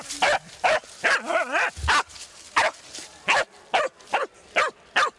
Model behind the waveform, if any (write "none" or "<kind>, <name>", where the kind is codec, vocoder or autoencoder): none